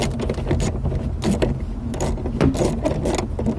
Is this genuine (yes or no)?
yes